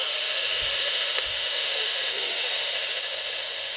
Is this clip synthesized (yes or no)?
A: yes